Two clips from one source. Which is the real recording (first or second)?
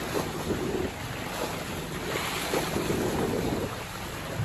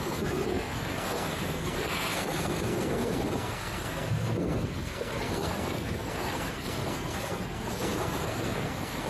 first